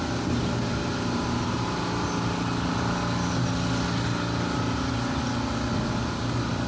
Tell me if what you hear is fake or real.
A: real